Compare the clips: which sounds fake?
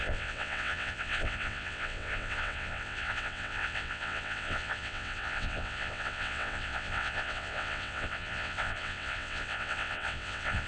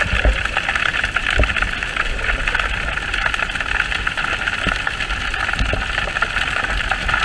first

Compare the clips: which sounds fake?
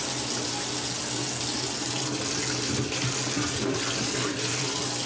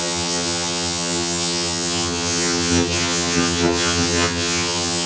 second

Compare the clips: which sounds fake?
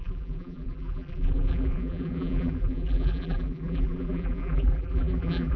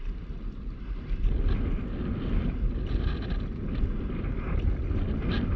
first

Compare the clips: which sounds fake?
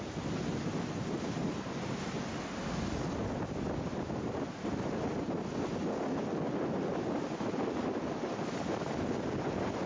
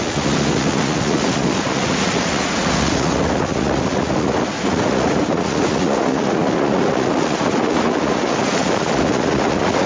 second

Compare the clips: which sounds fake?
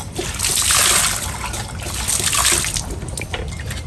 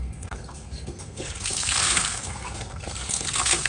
second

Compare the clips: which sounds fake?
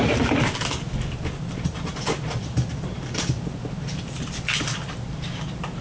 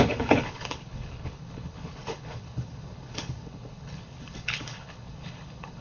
second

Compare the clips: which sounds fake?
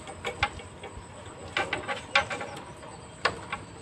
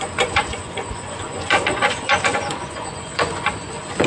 second